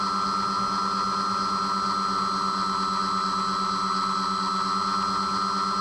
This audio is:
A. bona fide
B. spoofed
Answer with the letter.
A